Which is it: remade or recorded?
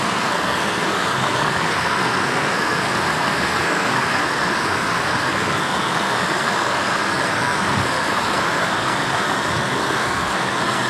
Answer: remade